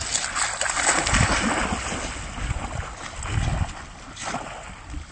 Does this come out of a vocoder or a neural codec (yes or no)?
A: no